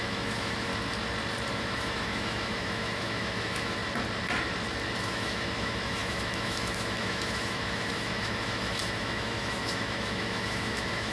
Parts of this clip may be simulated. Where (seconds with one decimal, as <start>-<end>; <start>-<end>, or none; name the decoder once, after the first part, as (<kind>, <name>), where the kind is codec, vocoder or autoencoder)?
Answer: 0.0-0.7 (autoencoder, DAC-VAE); 1.5-3.8; 5.0-11.1